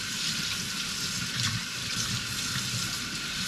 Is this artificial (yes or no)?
no